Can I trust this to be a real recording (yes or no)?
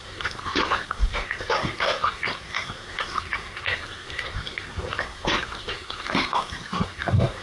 no